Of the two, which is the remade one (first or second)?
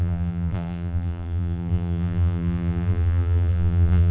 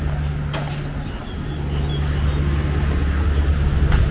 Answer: first